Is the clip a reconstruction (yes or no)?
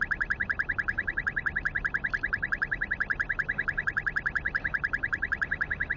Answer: no